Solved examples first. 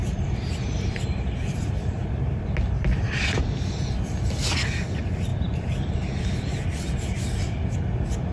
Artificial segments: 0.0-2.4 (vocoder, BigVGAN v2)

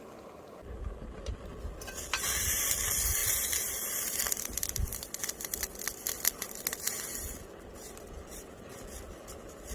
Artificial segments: 3.2-4.1 (vocoder, BigVGAN v2)

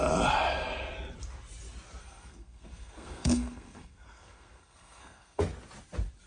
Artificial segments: 2.0-5.4 (codec, SNAC)

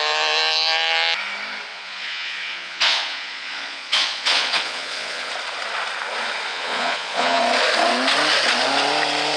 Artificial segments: 1.7-5.3 (vocoder, Vocos); 6.5-7.4

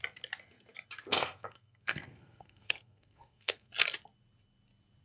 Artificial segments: 1.0-3.7 (codec, SNAC)

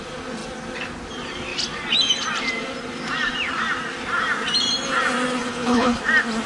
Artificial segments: 5.4-6.0 (codec, HILCodec)